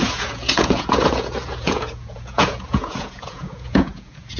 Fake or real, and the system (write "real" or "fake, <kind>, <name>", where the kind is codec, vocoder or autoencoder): fake, vocoder, Vocos